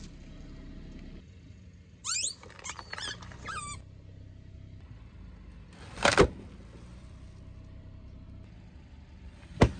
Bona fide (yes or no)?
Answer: yes